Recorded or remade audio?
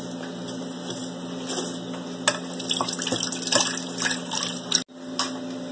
recorded